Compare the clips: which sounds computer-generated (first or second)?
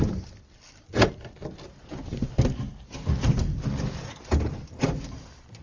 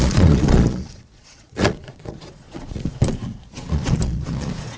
second